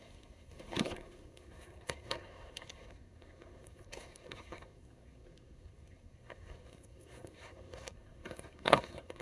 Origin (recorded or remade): remade